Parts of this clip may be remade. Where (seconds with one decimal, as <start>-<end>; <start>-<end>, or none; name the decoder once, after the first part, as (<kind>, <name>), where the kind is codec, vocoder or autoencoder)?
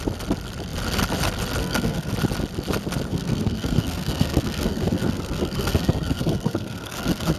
1.6-2.1 (codec, SNAC); 3.1-7.4